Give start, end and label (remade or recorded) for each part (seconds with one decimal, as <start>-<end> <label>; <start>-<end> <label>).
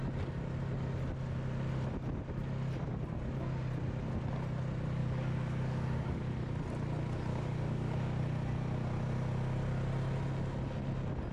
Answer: 0.0-5.0 recorded; 5.0-6.3 remade; 6.3-7.3 recorded; 7.3-8.2 remade; 8.2-11.3 recorded